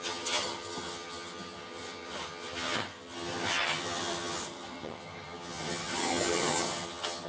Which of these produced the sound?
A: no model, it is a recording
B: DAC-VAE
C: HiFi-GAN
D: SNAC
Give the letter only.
C